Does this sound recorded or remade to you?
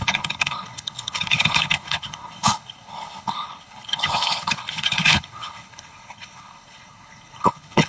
remade